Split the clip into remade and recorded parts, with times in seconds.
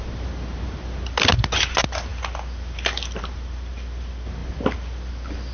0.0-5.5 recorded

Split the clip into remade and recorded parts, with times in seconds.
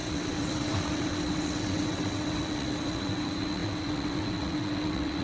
0.0-5.2 remade